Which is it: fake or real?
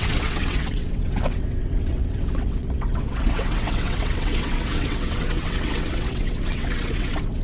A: fake